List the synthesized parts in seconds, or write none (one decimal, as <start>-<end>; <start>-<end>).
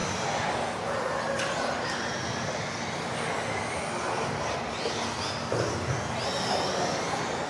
none